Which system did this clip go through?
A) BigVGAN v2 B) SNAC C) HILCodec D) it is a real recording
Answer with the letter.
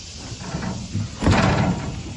A